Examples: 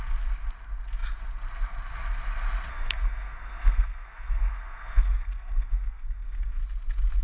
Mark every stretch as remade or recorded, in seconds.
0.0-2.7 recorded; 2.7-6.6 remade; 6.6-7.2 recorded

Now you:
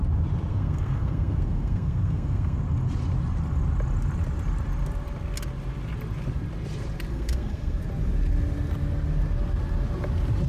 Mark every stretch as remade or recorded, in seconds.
0.0-0.5 recorded; 0.5-2.6 remade; 2.6-7.1 recorded; 7.1-7.8 remade; 7.8-10.5 recorded

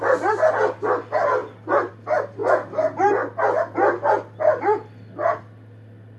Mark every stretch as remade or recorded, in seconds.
0.0-6.2 recorded

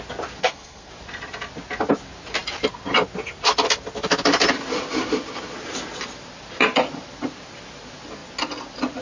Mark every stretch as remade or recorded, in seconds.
0.0-0.4 recorded; 0.4-0.9 remade; 0.9-9.0 recorded

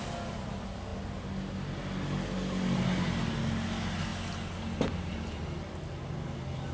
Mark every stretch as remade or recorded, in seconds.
0.0-6.7 recorded

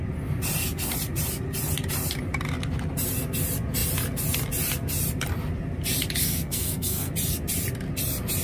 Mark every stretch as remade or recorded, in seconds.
0.0-6.2 recorded; 6.2-7.1 remade; 7.1-8.4 recorded